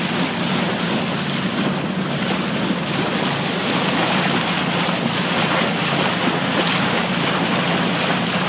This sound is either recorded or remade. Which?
recorded